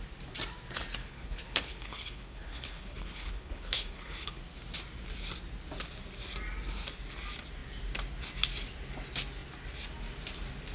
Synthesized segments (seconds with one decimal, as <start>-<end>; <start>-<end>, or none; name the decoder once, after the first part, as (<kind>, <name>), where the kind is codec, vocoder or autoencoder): 1.0-4.4 (codec, HILCodec)